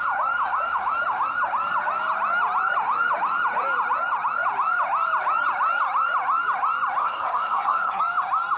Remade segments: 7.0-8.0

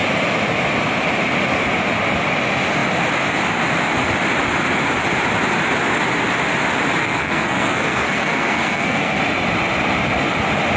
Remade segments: 7.0-9.2

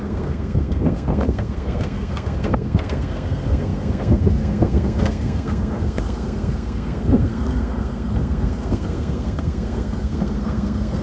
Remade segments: 0.0-11.0

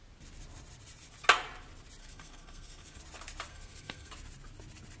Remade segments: 2.0-3.0; 3.5-4.1

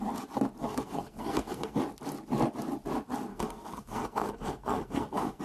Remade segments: 0.6-1.8; 3.3-5.4